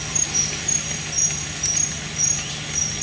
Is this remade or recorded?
recorded